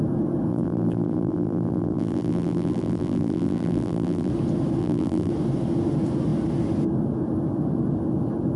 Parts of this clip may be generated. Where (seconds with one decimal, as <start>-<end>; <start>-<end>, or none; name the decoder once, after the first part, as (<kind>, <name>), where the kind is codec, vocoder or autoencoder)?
0.5-4.3 (vocoder, BigVGAN v2); 4.8-5.3